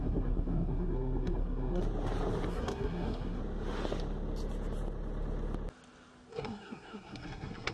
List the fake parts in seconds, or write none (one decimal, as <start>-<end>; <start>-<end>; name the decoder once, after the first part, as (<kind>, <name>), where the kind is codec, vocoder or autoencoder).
0.0-1.8 (codec, SNAC); 2.5-3.4; 6.3-7.7

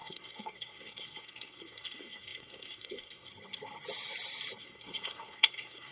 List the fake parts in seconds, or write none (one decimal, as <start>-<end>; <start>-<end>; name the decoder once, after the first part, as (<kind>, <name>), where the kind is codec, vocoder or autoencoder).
0.0-3.3 (codec, SNAC); 4.6-5.9

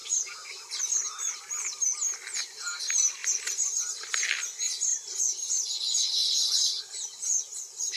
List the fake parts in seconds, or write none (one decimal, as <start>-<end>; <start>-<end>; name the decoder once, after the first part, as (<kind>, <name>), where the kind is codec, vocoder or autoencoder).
none

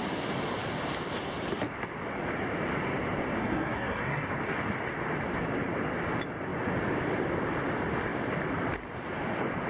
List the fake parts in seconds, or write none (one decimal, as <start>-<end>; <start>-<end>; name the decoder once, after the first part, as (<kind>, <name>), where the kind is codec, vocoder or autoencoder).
3.4-4.3 (codec, SNAC)

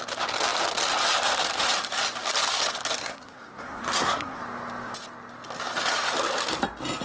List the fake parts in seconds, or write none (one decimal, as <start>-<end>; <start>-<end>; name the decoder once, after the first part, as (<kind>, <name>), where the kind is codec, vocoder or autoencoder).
3.0-4.4 (codec, SNAC)

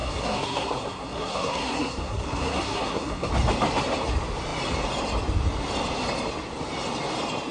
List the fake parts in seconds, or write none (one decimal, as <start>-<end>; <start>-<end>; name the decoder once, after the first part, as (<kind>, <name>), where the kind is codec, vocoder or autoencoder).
0.0-3.3 (codec, SNAC)

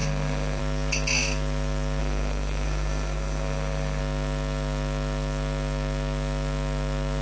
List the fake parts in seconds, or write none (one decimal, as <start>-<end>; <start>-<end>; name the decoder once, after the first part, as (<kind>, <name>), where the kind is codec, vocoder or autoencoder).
0.0-0.6 (codec, SNAC); 2.0-4.0